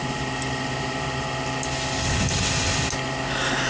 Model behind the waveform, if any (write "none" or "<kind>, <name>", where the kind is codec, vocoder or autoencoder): none